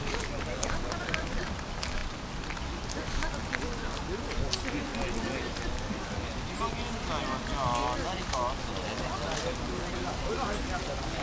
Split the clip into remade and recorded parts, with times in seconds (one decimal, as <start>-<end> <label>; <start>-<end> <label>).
0.0-11.2 recorded